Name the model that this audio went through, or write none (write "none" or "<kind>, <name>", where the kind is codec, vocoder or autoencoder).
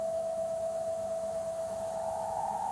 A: autoencoder, DAC-VAE